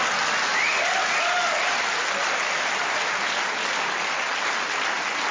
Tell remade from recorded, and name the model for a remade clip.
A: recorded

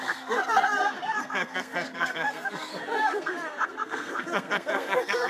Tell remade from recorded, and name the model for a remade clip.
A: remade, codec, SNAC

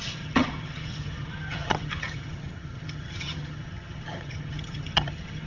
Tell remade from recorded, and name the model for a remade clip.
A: remade, vocoder, HiFi-GAN